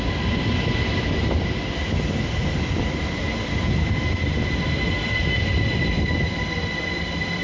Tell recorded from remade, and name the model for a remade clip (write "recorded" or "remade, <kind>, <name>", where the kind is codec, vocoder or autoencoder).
remade, vocoder, BigVGAN v2